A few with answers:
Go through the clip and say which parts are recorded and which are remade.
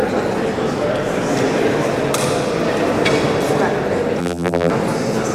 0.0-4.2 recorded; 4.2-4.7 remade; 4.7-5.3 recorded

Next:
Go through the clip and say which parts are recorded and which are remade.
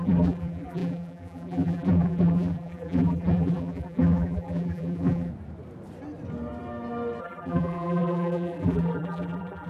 0.0-5.3 remade; 5.3-7.2 recorded; 7.2-9.7 remade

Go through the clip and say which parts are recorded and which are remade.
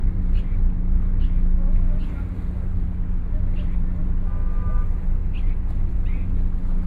0.0-6.9 recorded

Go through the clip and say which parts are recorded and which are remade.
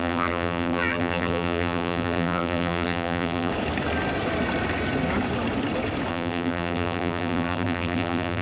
0.0-3.5 remade; 3.5-6.1 recorded; 6.1-8.4 remade